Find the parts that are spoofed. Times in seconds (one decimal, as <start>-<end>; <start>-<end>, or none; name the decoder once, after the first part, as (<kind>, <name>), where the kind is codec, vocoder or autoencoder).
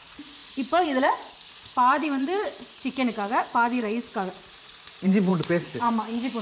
0.0-6.4 (vocoder, Vocos)